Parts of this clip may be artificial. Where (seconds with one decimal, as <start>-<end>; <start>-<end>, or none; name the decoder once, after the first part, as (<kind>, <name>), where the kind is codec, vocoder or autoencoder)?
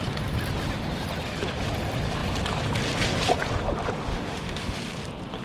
4.1-4.8 (autoencoder, DAC-VAE)